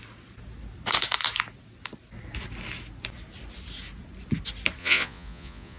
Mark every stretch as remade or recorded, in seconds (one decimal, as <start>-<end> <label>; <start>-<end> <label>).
0.0-4.8 recorded; 4.8-5.8 remade